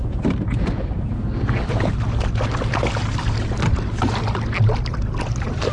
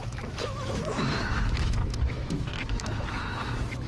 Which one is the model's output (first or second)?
second